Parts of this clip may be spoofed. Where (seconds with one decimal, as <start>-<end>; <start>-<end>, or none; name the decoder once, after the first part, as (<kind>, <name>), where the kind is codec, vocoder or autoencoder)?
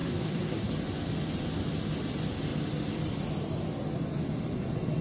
0.0-0.7 (codec, SNAC)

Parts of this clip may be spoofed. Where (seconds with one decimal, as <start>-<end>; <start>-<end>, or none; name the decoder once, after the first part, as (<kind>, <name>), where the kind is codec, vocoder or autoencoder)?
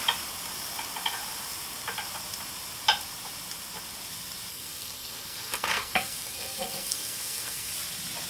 4.5-7.7 (codec, SNAC)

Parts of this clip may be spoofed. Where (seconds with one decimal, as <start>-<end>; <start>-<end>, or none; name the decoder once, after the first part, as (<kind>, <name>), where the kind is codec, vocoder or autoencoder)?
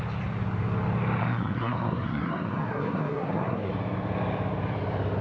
1.2-3.7 (codec, SNAC)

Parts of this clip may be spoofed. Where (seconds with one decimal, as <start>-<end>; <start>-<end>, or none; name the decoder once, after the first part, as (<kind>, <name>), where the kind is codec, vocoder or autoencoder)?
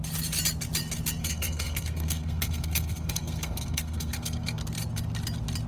1.2-4.6 (codec, SNAC)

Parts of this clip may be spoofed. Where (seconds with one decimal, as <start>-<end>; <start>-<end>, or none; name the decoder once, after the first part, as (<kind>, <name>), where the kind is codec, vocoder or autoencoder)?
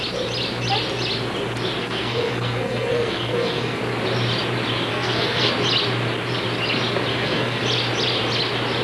1.8-3.8 (codec, SNAC); 4.9-5.5; 7.1-7.6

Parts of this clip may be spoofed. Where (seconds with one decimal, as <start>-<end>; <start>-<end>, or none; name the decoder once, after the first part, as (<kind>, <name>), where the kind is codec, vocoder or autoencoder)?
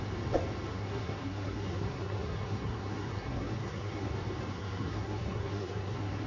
0.7-4.1 (codec, SNAC); 4.5-6.3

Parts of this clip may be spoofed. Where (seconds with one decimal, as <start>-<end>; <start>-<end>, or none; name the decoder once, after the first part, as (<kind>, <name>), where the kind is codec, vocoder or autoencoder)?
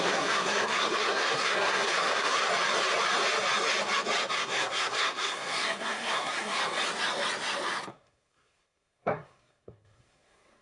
0.0-2.5 (codec, SNAC); 4.3-6.6; 7.9-10.6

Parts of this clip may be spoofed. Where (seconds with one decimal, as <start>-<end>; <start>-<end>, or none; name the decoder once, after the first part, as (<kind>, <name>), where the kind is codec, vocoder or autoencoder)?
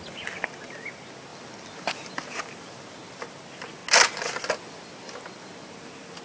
none